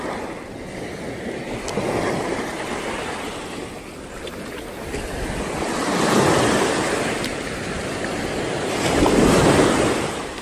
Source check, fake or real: real